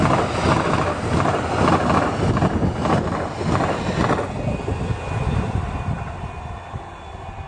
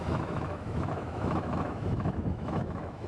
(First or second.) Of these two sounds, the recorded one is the first